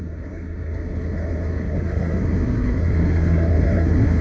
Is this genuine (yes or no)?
no